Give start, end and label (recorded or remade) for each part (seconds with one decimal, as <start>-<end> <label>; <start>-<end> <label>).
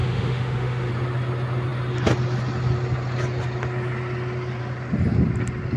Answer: 0.0-0.9 remade; 0.9-5.8 recorded